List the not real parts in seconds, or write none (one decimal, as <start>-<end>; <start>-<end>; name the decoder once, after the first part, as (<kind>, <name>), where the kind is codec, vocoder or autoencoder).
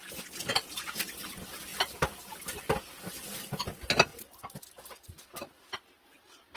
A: 1.7-2.5 (vocoder, BigVGAN v2)